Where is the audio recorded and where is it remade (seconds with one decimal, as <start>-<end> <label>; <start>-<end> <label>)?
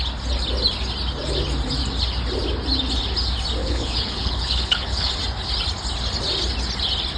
0.0-3.6 recorded; 3.6-5.1 remade; 5.1-7.2 recorded